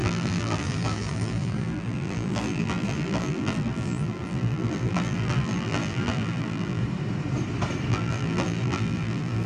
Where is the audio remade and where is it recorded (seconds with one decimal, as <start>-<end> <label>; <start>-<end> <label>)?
0.0-6.8 remade; 6.8-7.9 recorded; 7.9-9.5 remade